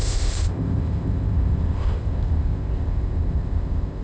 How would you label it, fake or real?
fake